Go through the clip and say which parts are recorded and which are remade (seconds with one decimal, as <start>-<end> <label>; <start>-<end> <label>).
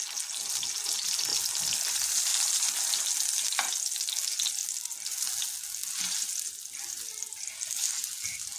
0.0-2.3 recorded; 2.3-3.1 remade; 3.1-8.6 recorded